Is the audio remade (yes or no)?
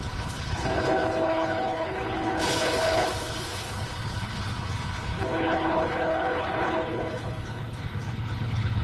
yes